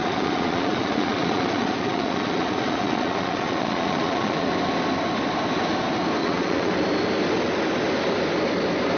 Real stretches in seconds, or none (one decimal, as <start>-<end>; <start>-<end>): 4.5-6.2; 6.7-9.0